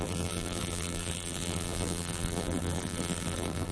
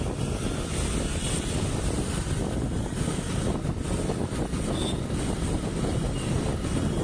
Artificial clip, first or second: first